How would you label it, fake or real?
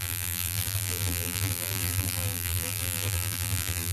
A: fake